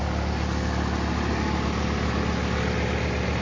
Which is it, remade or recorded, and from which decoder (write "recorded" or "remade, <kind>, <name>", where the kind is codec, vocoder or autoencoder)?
recorded